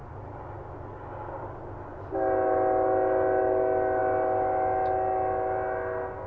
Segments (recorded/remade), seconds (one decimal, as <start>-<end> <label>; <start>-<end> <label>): 0.0-6.3 recorded